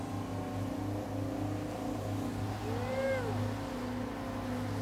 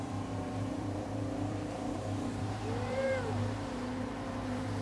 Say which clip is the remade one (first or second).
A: second